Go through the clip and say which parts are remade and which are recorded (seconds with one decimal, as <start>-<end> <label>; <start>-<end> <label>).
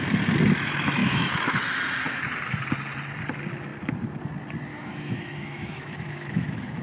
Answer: 0.0-1.0 recorded; 1.0-1.6 remade; 1.6-4.7 recorded; 4.7-6.8 remade